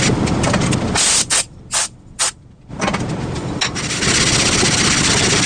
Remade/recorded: recorded